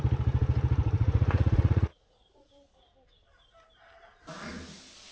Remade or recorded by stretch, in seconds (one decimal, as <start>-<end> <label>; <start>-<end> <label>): 0.0-0.8 recorded; 0.8-2.5 remade; 2.5-5.1 recorded